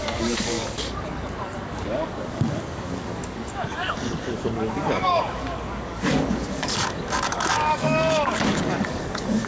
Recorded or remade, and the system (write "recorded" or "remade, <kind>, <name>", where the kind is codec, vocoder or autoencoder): remade, codec, DAC